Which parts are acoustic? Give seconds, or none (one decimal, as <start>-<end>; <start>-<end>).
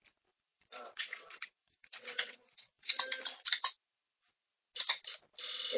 0.0-0.5; 3.0-5.8